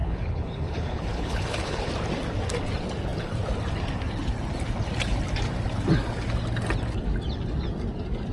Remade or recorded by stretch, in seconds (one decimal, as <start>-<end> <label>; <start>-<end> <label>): 0.0-1.9 remade; 1.9-8.3 recorded